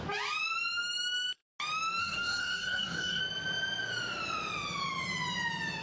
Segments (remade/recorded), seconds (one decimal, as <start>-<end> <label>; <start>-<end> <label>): 0.0-2.0 recorded; 2.0-3.2 remade; 3.2-5.8 recorded